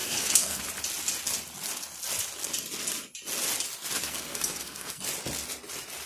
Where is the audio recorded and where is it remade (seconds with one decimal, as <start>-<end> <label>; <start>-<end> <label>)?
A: 0.0-0.6 remade; 0.6-4.0 recorded; 4.0-5.0 remade; 5.0-6.1 recorded